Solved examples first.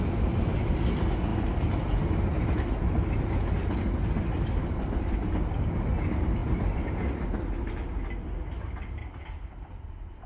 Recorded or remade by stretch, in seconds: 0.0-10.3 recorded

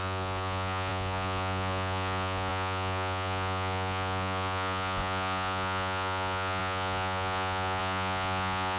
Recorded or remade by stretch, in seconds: 0.0-8.8 remade

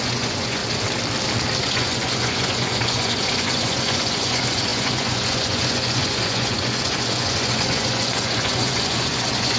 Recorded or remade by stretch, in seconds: 0.0-0.6 remade; 0.6-1.6 recorded; 1.6-9.6 remade

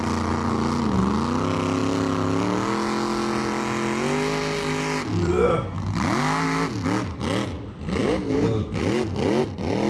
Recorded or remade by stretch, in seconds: 0.0-9.9 recorded

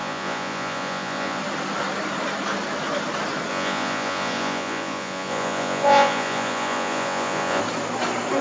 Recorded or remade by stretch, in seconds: 0.0-1.4 remade; 1.4-3.5 recorded; 3.5-7.6 remade; 7.6-8.4 recorded